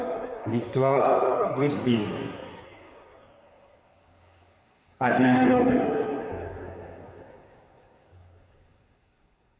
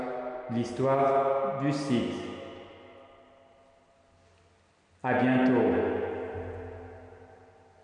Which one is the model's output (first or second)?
first